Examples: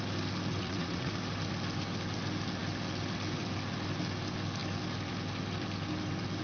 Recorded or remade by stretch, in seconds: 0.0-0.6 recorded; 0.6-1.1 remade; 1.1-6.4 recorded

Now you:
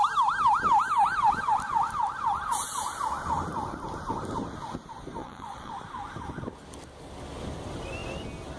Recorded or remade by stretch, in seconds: 0.0-5.2 recorded; 5.2-5.7 remade; 5.7-8.6 recorded

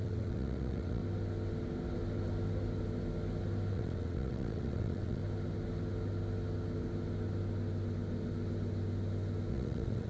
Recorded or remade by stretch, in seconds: 0.0-1.0 remade; 1.0-3.7 recorded; 3.7-5.2 remade; 5.2-9.5 recorded; 9.5-10.1 remade